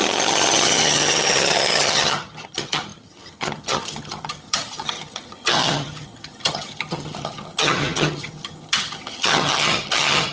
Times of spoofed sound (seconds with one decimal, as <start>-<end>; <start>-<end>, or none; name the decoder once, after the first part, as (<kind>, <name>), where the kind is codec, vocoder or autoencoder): 0.0-10.3 (vocoder, HiFi-GAN)